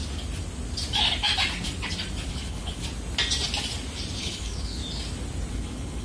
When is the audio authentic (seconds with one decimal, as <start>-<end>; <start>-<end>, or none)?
0.0-2.3; 2.8-4.2; 4.8-5.5